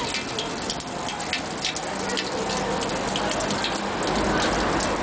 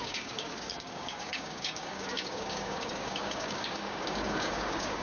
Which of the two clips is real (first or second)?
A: first